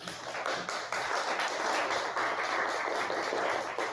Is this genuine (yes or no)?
yes